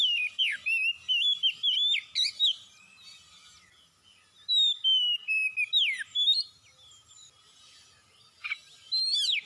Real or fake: real